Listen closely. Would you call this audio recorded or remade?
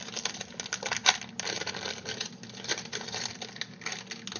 recorded